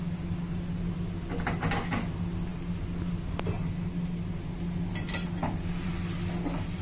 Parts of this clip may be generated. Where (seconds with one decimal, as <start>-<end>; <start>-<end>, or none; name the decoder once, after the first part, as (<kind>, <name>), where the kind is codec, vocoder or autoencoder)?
none